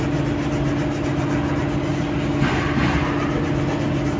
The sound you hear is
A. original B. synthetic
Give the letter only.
A